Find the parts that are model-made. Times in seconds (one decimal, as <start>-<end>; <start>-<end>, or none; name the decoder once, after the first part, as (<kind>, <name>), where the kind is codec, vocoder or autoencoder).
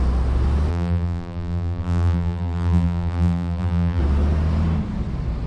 0.7-4.0 (vocoder, BigVGAN v2)